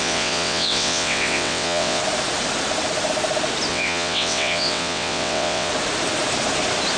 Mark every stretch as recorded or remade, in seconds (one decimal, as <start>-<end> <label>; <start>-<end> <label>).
0.0-2.0 remade; 2.0-3.7 recorded; 3.7-5.7 remade; 5.7-7.0 recorded